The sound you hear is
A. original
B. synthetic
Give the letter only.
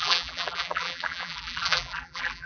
B